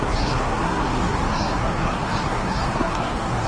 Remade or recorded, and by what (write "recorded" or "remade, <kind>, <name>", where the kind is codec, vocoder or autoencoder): remade, codec, SNAC